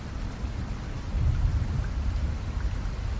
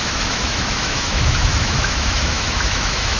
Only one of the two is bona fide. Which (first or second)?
first